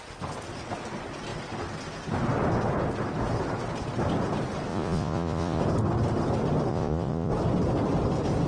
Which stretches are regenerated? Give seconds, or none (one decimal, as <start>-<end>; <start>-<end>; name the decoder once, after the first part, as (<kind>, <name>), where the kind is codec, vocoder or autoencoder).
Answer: 4.7-5.6 (vocoder, Vocos); 6.7-7.3